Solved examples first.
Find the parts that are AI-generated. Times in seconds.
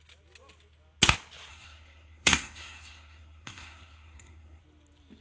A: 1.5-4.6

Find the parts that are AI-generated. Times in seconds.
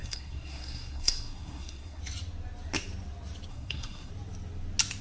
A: 0.0-2.0; 3.5-4.1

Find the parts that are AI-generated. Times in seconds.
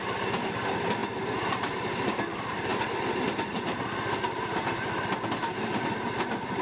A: none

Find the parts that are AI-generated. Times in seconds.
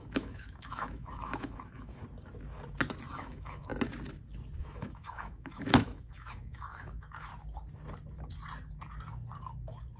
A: 0.0-2.0; 3.1-3.7; 4.6-7.3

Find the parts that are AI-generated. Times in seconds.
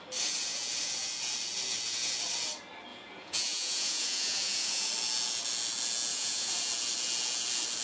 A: 2.9-4.9; 6.1-6.7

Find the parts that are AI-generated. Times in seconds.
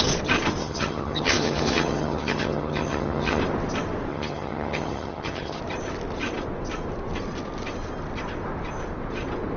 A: 0.6-3.4; 4.1-5.6